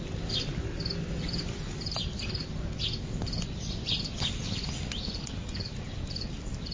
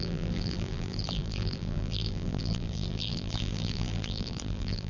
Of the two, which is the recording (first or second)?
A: first